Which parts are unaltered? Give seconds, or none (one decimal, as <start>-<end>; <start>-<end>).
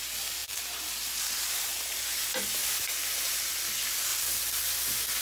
0.0-0.4; 2.0-2.6; 3.5-4.1; 4.6-5.2